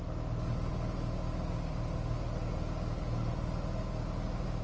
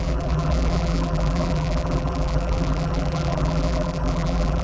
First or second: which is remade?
second